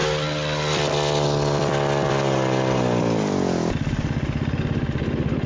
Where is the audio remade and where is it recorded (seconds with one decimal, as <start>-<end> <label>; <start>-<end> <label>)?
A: 0.0-5.5 recorded